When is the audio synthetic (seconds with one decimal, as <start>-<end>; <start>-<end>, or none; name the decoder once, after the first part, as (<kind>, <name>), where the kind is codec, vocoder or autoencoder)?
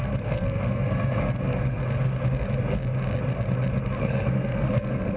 0.0-1.8 (codec, SNAC); 4.0-5.2